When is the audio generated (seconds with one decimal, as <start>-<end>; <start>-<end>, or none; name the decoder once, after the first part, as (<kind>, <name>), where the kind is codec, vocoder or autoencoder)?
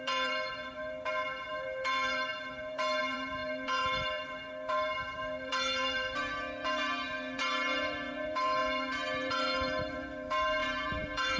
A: 0.0-11.4 (vocoder, BigVGAN v2)